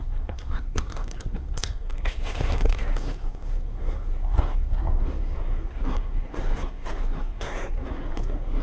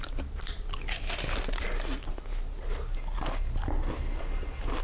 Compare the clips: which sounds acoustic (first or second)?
second